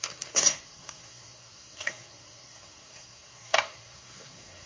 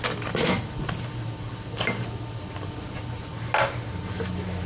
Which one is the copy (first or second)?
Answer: first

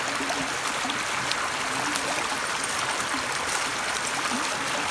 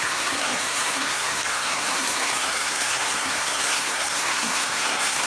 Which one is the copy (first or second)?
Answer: second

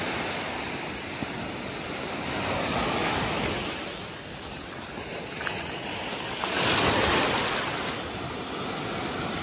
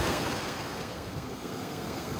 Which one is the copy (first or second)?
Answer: second